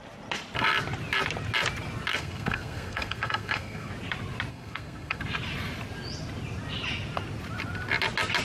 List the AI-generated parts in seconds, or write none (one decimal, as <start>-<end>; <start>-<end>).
2.1-3.9; 4.5-5.2